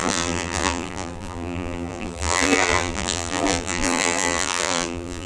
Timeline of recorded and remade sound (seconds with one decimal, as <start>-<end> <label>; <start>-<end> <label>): 0.0-5.3 remade